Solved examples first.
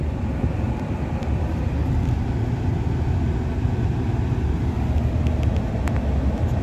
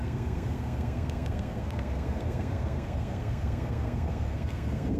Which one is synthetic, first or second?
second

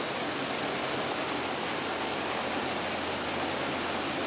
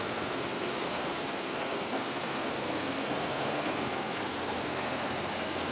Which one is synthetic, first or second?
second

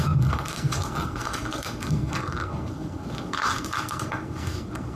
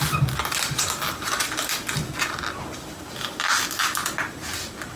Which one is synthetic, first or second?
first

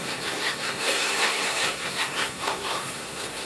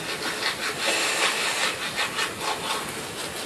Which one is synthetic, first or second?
first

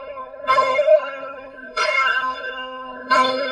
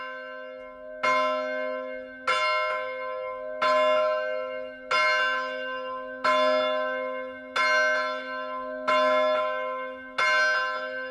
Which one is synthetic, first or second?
first